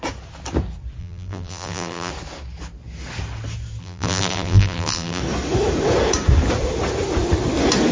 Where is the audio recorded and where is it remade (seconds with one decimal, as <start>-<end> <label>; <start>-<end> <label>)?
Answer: 0.0-1.0 recorded; 1.0-2.1 remade; 2.1-3.8 recorded; 3.8-5.2 remade; 5.2-7.9 recorded